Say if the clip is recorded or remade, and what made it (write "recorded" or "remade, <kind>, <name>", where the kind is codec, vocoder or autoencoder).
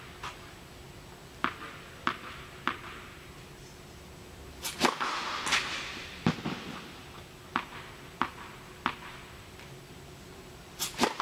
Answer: recorded